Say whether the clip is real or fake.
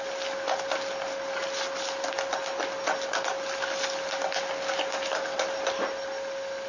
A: real